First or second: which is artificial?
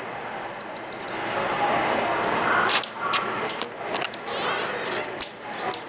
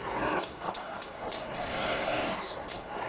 second